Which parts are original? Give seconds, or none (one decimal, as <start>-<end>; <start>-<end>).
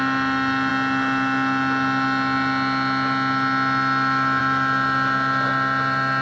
0.0-6.2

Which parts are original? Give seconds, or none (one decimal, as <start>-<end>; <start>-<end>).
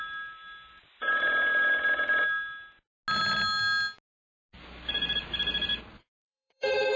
0.0-6.0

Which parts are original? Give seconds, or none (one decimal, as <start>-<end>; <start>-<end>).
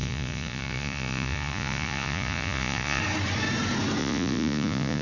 3.0-4.0